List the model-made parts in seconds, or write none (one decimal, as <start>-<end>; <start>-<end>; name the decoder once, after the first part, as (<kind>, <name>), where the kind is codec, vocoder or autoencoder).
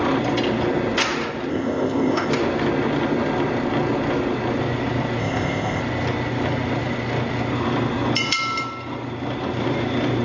1.5-2.3 (codec, ZipCodec); 5.2-5.8